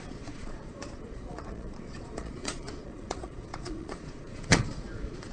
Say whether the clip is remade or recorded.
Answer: remade